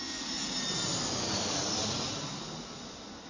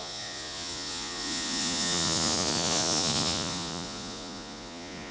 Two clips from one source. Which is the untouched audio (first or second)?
first